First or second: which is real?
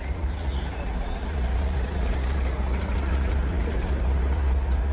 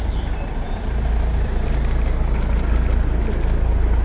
second